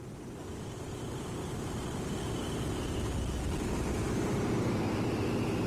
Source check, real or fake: real